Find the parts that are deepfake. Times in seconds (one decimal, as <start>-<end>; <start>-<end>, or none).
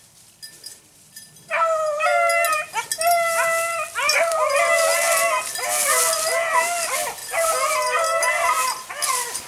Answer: none